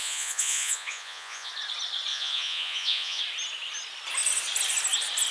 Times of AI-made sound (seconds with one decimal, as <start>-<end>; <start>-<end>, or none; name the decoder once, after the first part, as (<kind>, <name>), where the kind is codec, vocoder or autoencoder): 0.0-1.5 (vocoder, Vocos); 2.1-3.2